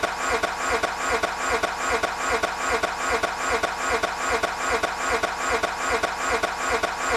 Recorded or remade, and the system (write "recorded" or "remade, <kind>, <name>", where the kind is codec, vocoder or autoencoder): recorded